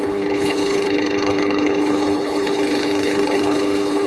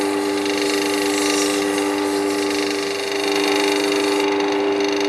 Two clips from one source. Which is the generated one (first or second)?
first